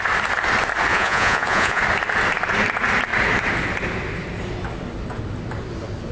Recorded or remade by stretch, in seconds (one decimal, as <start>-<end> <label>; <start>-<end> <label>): 0.0-0.9 recorded; 0.9-1.8 remade; 1.8-6.1 recorded